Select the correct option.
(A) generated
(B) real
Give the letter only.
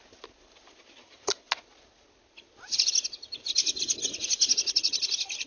B